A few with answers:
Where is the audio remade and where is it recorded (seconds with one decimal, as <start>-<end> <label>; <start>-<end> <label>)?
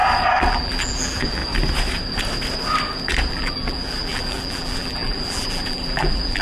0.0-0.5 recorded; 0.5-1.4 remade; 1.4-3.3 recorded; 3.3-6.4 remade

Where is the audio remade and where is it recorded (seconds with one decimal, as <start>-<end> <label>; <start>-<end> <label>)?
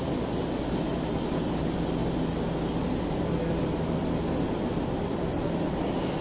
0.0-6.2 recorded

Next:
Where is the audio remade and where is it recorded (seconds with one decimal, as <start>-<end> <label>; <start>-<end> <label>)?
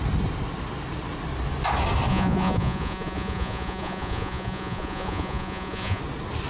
0.0-2.1 recorded; 2.1-6.0 remade; 6.0-6.5 recorded